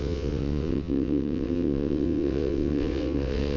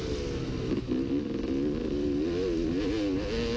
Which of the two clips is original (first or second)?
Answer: second